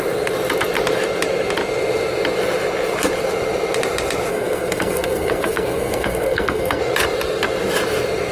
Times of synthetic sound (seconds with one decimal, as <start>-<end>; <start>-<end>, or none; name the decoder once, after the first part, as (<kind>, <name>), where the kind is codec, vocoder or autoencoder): 4.3-6.8 (codec, SNAC)